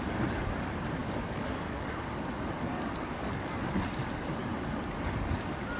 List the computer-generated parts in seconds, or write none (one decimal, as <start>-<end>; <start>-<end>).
1.0-2.1; 2.7-3.6